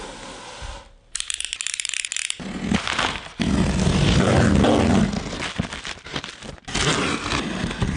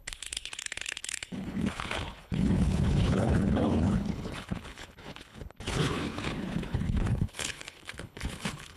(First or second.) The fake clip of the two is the second